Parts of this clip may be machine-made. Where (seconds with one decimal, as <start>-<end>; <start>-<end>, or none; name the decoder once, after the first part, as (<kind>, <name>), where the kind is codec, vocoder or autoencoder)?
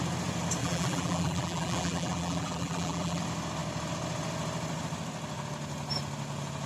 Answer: 0.6-3.2 (vocoder, BigVGAN v2)